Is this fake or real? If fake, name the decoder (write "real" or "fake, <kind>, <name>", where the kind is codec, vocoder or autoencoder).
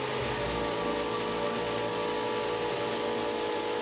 real